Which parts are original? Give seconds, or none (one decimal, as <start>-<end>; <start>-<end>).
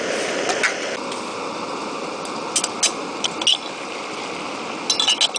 0.0-5.4